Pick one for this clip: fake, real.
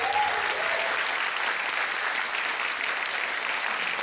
real